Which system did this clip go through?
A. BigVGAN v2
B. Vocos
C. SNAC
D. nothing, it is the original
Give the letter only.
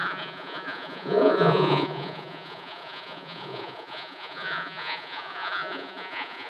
B